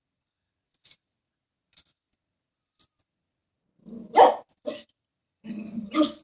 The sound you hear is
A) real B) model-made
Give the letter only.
A